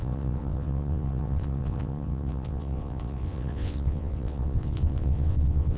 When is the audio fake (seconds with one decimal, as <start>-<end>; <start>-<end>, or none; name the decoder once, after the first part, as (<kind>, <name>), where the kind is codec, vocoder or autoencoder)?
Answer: 0.0-5.8 (vocoder, WaveNeXt)